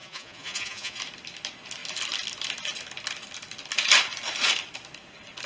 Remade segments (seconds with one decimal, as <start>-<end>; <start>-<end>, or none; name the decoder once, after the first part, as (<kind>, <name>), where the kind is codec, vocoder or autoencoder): 0.0-1.0 (vocoder, Vocos)